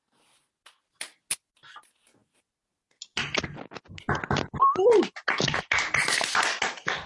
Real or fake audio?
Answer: real